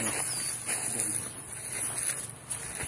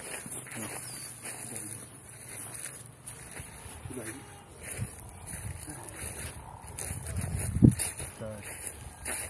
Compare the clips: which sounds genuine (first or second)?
first